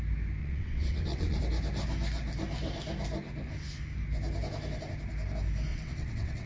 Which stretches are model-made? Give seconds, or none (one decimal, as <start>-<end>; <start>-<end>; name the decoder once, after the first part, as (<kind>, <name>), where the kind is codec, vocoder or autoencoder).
0.4-1.4 (vocoder, WaveNeXt); 5.7-6.5